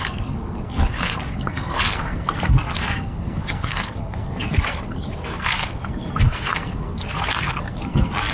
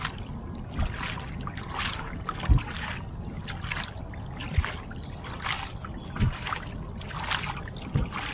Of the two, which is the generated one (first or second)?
first